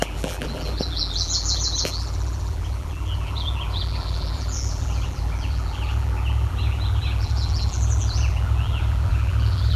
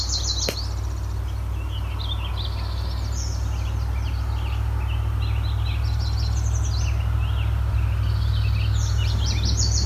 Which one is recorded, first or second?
second